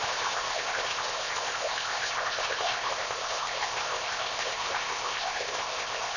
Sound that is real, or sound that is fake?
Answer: fake